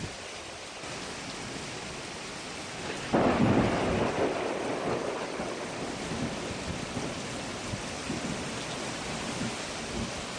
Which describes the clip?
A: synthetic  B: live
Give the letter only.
B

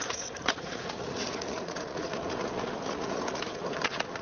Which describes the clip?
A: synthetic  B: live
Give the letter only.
A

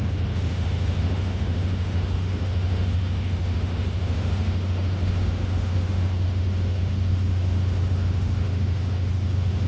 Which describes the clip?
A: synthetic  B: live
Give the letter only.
A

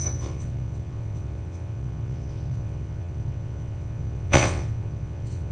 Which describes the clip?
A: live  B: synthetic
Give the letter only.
B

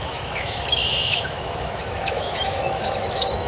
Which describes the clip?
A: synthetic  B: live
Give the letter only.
A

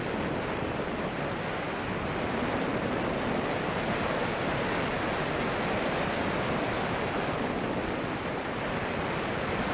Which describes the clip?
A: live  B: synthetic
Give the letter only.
A